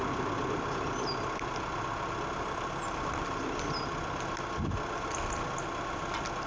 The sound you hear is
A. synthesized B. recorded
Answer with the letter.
B